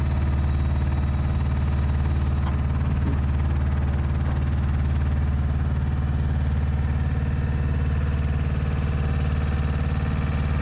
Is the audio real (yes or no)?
yes